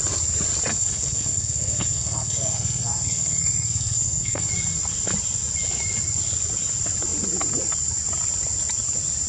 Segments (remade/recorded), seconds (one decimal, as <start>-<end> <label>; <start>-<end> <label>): 0.0-0.7 recorded; 0.7-4.5 remade; 4.5-9.3 recorded